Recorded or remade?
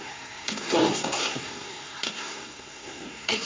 remade